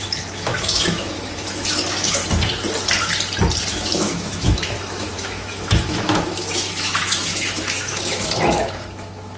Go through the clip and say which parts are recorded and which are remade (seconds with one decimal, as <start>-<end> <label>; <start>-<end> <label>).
0.0-2.2 remade; 2.2-3.7 recorded; 3.7-9.4 remade